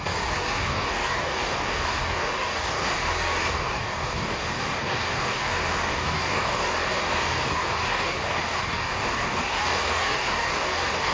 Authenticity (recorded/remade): remade